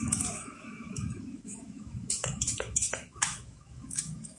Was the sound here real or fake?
fake